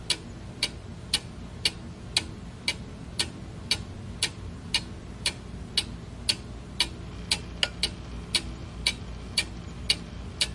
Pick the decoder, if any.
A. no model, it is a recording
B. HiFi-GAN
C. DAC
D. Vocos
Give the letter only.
A